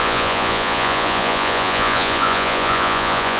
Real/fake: fake